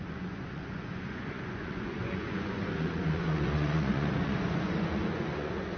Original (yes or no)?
no